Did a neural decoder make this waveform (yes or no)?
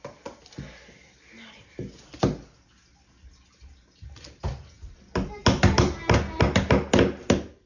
no